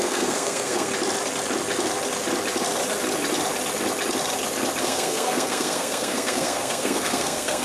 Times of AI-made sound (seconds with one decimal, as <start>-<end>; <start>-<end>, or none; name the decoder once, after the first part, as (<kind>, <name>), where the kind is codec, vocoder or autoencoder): 0.0-0.9 (codec, SNAC); 4.8-7.6